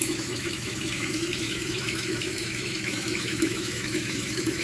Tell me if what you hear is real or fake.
fake